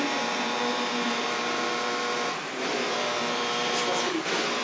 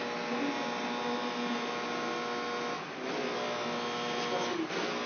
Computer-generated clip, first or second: first